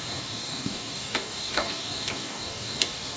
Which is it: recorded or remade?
remade